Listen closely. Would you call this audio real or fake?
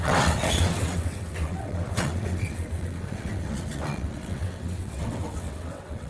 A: fake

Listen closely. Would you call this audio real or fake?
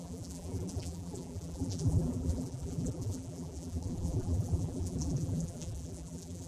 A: fake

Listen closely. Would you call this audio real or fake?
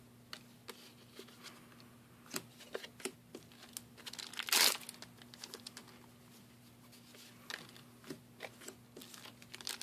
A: real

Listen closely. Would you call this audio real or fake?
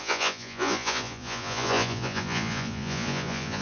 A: fake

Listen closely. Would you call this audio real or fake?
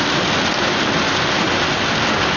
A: real